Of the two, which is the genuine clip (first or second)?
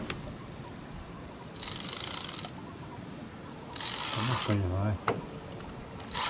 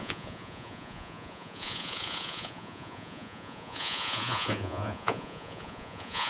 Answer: first